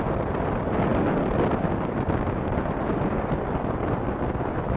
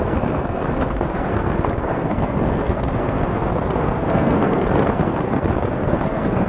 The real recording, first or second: first